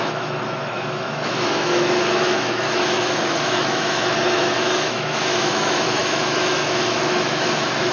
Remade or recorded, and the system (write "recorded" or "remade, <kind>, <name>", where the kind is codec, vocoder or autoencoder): remade, autoencoder, DAC-VAE